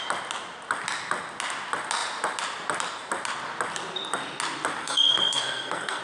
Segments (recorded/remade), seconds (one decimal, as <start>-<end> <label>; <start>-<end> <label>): 0.0-4.8 recorded; 4.8-6.0 remade